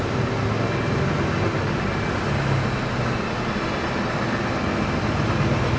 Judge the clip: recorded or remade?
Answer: recorded